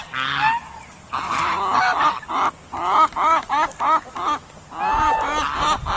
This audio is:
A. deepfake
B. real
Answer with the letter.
B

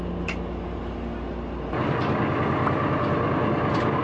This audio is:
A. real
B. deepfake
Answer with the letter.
A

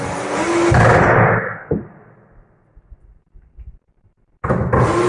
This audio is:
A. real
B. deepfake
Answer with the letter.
A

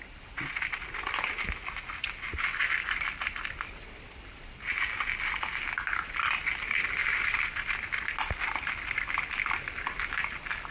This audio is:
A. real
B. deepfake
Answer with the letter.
A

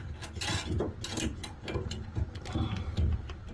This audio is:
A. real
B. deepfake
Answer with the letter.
A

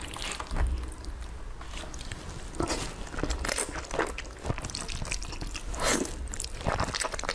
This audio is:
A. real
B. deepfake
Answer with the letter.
A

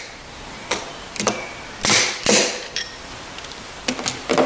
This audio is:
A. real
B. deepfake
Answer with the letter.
A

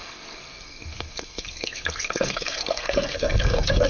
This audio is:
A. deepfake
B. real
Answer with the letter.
A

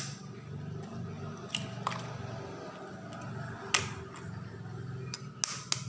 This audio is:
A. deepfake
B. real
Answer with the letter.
B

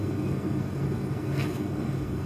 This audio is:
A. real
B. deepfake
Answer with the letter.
B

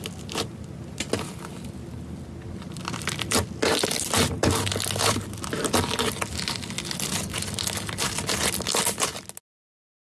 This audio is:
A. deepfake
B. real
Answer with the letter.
B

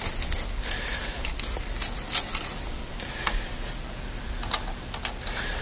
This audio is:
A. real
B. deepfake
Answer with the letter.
A